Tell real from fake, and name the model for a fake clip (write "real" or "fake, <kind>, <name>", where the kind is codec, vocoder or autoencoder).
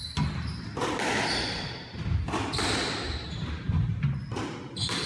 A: real